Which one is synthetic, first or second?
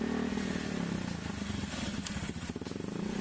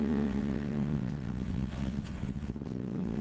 second